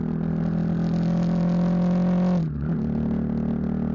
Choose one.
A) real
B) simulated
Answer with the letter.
A